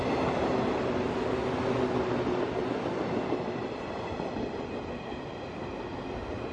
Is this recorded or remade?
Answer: recorded